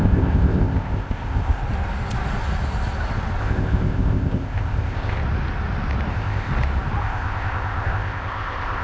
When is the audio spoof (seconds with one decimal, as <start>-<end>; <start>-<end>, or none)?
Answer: 0.0-1.6; 3.4-5.2; 6.1-6.5; 7.0-8.8